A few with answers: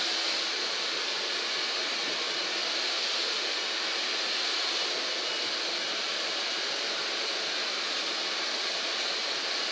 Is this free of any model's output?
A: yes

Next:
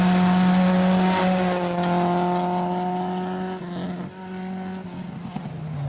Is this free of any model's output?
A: yes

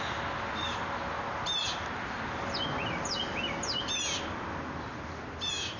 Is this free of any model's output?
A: yes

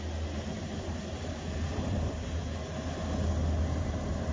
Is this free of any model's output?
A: yes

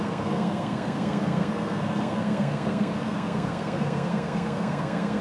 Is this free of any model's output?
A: no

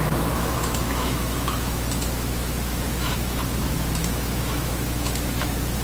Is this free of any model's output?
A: no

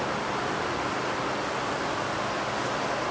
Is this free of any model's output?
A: yes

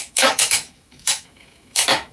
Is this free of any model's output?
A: no